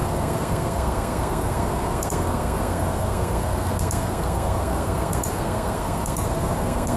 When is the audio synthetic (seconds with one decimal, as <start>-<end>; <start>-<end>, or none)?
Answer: 0.0-7.0